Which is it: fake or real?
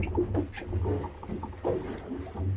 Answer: real